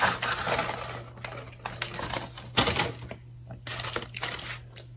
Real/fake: real